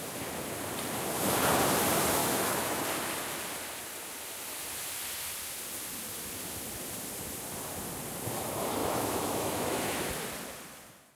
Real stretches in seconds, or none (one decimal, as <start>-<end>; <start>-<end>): 0.0-2.2; 2.8-8.8; 10.1-11.1